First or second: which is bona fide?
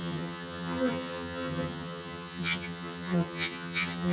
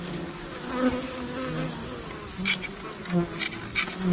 second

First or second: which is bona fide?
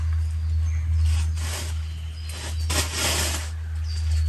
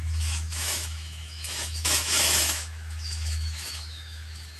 first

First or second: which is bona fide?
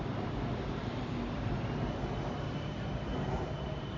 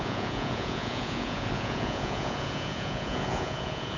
first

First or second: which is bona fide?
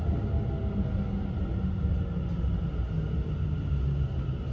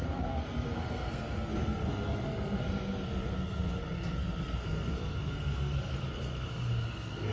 first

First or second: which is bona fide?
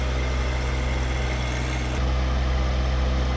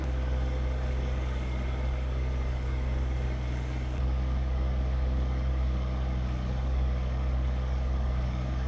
first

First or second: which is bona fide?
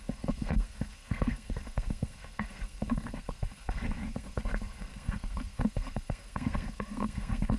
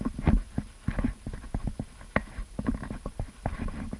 second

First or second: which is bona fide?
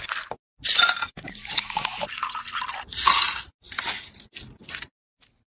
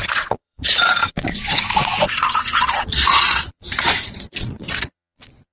first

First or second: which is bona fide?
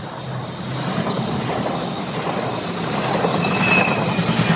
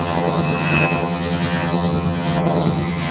first